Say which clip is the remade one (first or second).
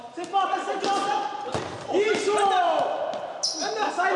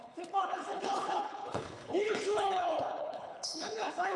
second